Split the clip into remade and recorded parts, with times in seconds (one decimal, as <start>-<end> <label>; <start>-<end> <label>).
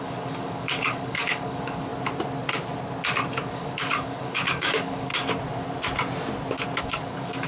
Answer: 0.0-1.9 remade; 1.9-3.5 recorded; 3.5-5.1 remade; 5.1-6.8 recorded; 6.8-7.5 remade